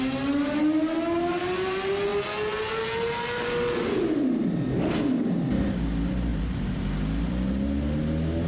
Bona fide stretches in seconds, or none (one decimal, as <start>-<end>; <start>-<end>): 0.0-8.5

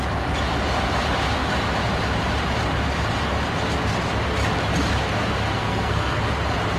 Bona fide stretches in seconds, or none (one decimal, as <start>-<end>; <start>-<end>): 0.0-5.5; 6.2-6.8

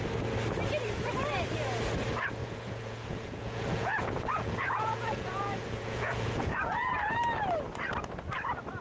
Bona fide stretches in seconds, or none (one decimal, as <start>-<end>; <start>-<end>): 0.0-2.4; 7.2-8.8

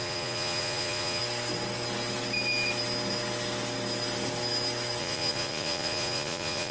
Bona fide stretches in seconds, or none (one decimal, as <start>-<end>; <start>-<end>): 1.2-5.0

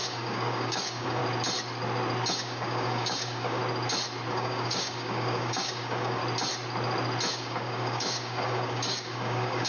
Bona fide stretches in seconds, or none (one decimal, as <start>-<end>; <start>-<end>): 1.2-2.3; 3.6-4.3; 6.2-7.3